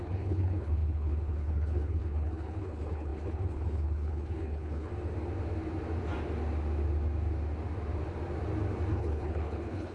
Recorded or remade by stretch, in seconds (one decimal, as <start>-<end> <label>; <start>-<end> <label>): 0.0-4.9 remade; 4.9-8.9 recorded; 8.9-9.9 remade